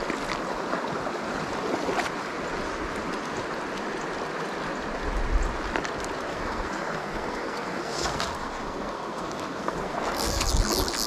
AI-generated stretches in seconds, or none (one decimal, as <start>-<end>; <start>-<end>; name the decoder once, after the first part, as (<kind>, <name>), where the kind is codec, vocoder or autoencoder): 6.3-10.5 (codec, SNAC)

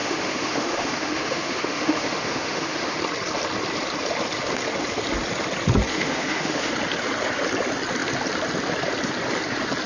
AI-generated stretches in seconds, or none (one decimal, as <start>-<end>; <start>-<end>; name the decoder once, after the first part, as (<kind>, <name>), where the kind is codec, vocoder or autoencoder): 0.0-3.0 (autoencoder, DAC-VAE); 5.9-6.7

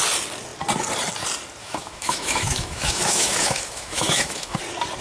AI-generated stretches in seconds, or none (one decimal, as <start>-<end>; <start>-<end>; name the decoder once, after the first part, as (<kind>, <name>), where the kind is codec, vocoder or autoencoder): 1.6-4.6 (autoencoder, DAC-VAE)

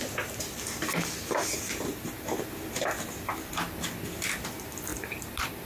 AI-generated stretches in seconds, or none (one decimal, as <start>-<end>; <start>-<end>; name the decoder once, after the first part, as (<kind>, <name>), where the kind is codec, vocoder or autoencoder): 4.9-5.7 (vocoder, BigVGAN v2)